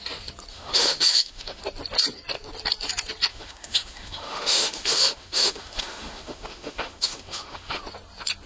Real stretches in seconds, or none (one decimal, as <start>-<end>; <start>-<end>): 0.0-0.5; 1.6-3.3; 7.8-8.5